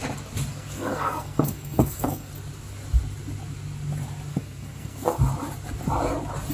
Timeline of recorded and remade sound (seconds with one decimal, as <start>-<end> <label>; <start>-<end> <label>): 0.0-0.5 recorded; 0.5-2.3 remade; 2.3-4.3 recorded; 4.3-5.2 remade; 5.2-6.5 recorded